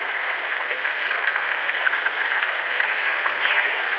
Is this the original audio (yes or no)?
no